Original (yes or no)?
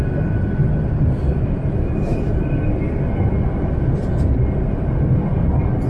yes